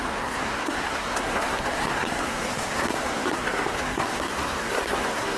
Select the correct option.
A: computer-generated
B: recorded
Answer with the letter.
A